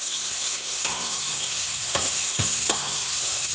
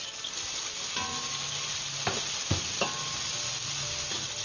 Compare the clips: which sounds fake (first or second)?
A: first